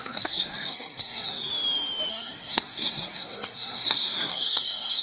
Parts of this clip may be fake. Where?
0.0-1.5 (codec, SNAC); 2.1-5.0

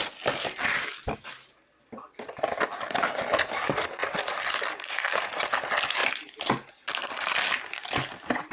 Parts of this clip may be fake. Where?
4.0-5.5 (vocoder, BigVGAN v2); 6.0-7.6

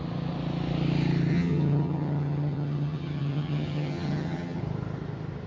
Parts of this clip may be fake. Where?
1.3-4.6 (vocoder, HiFi-GAN)

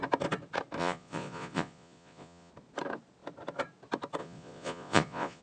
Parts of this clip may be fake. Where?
0.8-2.5 (vocoder, Vocos); 4.2-5.4